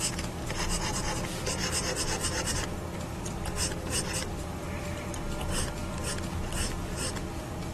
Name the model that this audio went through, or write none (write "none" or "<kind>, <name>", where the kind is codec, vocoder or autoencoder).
vocoder, BigVGAN v2